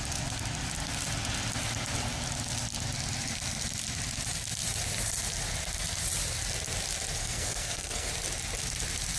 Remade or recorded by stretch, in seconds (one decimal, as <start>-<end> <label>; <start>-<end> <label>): 0.0-7.2 recorded; 7.2-8.1 remade; 8.1-9.2 recorded